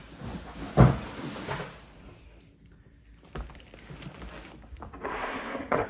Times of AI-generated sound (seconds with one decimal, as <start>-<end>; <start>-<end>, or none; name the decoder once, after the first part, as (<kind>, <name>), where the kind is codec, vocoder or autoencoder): 5.1-5.9 (codec, SNAC)